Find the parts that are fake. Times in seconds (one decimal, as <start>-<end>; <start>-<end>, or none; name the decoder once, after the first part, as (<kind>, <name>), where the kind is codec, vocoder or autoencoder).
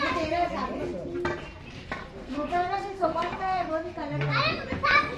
2.2-3.7 (codec, SNAC)